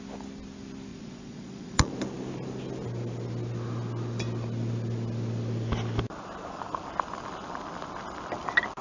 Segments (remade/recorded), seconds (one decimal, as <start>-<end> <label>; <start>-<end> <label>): 0.0-0.9 recorded; 0.9-1.9 remade; 1.9-8.8 recorded